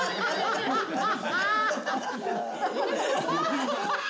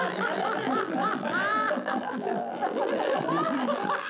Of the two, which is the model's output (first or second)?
second